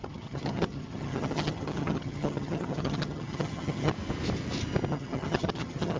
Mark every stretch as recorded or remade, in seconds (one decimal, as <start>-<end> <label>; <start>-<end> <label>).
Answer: 0.0-3.9 remade; 3.9-4.9 recorded; 4.9-6.0 remade

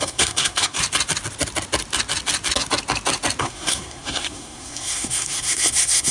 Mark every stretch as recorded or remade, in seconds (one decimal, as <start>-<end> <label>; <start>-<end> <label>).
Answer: 0.0-0.8 remade; 0.8-3.4 recorded; 3.4-6.1 remade

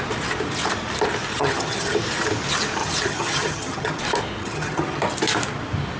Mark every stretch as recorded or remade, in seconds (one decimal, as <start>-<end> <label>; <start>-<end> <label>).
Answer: 0.0-1.3 recorded; 1.3-2.0 remade; 2.0-2.8 recorded; 2.8-4.0 remade; 4.0-4.4 recorded; 4.4-5.0 remade; 5.0-6.0 recorded

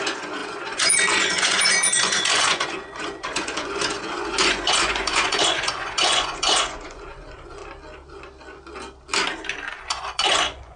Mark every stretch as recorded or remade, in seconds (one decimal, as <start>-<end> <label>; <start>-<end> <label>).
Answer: 0.0-7.6 remade; 7.6-9.7 recorded; 9.7-10.8 remade

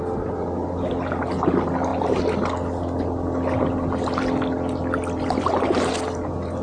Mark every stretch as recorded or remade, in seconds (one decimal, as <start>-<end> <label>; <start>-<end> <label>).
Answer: 0.0-6.6 recorded